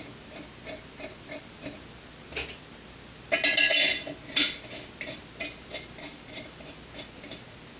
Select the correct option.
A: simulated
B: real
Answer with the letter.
B